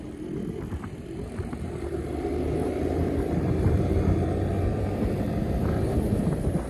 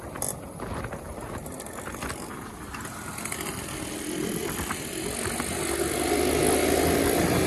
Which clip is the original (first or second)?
second